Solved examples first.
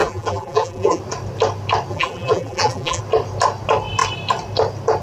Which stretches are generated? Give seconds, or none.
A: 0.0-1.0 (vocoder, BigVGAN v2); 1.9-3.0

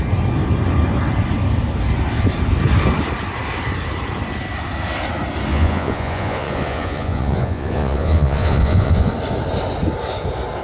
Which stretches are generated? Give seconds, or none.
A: 5.5-9.1 (vocoder, Vocos)

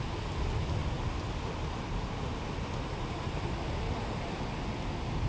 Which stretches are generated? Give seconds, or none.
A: none

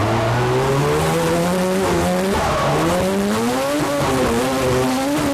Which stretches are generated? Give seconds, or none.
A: none

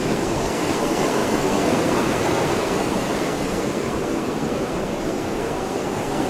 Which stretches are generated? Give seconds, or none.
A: 0.0-6.3 (codec, SNAC)

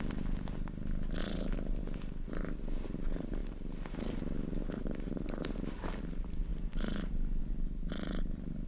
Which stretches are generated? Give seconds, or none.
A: 1.2-1.8 (vocoder, BigVGAN v2); 6.5-7.4